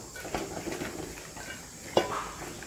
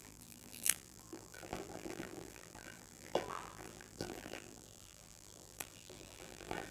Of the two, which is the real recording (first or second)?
first